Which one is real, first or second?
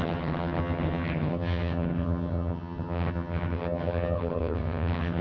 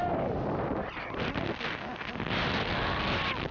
second